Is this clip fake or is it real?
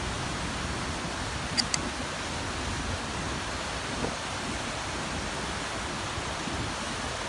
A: real